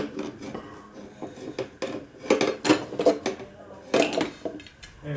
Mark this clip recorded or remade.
recorded